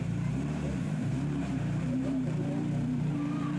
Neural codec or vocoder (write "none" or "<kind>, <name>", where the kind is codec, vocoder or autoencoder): vocoder, BigVGAN v2